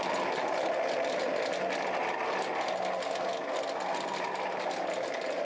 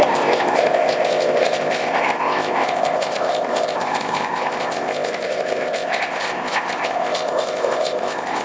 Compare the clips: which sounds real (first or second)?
first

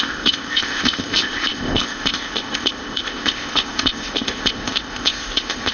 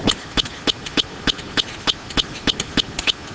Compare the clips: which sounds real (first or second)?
second